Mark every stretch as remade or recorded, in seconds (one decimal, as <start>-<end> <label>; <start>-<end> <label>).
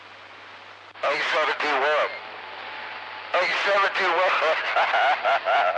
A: 0.0-5.8 recorded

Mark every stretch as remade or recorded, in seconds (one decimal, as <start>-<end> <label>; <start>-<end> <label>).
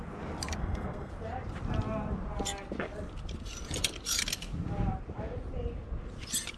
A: 0.0-0.6 recorded; 0.6-1.1 remade; 1.1-6.6 recorded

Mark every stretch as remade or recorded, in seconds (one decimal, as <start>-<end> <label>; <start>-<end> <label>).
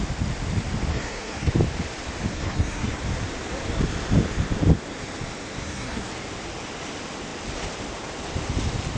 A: 0.0-0.9 recorded; 0.9-1.5 remade; 1.5-2.3 recorded; 2.3-3.0 remade; 3.0-5.6 recorded; 5.6-6.1 remade; 6.1-9.0 recorded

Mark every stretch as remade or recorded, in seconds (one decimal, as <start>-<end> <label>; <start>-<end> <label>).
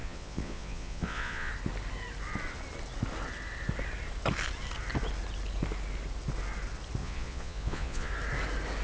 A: 0.0-1.5 remade; 1.5-7.0 recorded; 7.0-8.1 remade; 8.1-8.8 recorded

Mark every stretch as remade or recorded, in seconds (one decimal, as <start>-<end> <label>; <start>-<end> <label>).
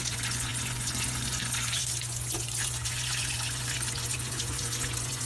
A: 0.0-5.3 remade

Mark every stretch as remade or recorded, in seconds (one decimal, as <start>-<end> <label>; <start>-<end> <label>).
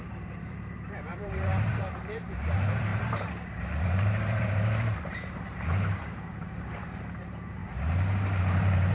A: 0.0-7.6 remade; 7.6-8.4 recorded; 8.4-8.9 remade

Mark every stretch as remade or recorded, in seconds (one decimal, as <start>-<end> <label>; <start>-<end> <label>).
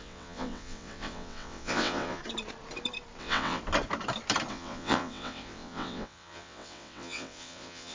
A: 0.0-2.2 remade; 2.2-3.2 recorded; 3.2-3.6 remade; 3.6-4.5 recorded; 4.5-7.9 remade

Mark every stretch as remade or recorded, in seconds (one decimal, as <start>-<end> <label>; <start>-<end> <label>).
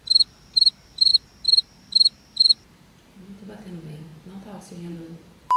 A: 0.0-4.1 remade; 4.1-4.6 recorded; 4.6-5.6 remade